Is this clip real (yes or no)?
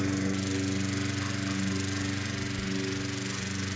yes